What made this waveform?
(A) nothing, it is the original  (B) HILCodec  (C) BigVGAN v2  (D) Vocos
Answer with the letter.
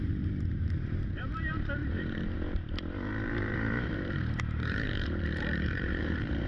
C